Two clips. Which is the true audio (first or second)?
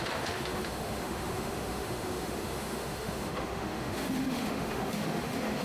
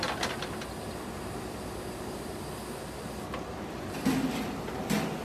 second